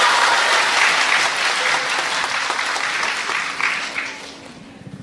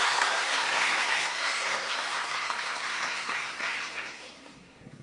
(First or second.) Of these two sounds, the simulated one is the second